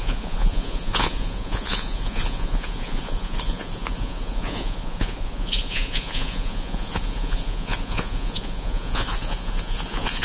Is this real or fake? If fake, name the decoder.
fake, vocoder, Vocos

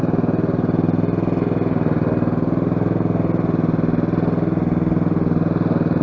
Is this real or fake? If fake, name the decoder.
real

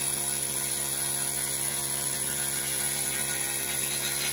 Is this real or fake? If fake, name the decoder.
real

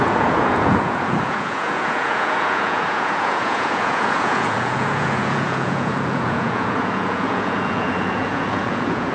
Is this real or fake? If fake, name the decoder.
fake, vocoder, Vocos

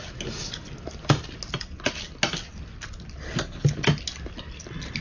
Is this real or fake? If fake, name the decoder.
real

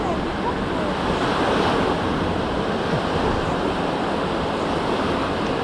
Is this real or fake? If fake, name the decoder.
real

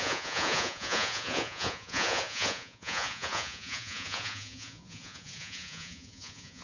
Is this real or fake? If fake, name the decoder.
fake, vocoder, Vocos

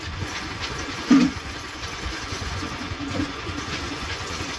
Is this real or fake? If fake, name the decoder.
fake, vocoder, Vocos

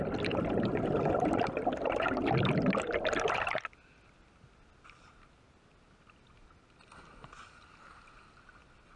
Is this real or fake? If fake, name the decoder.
real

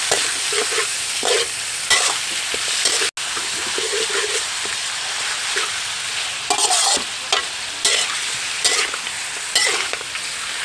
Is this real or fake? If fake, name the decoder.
real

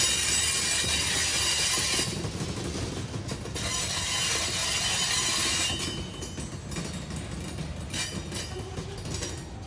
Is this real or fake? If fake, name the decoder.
real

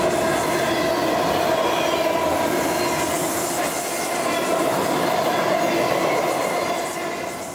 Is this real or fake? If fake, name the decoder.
real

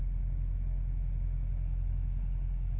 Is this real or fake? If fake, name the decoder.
real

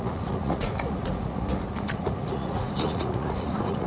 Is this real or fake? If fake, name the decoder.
fake, vocoder, Vocos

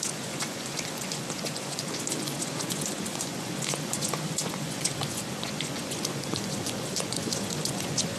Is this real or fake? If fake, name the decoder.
fake, vocoder, Vocos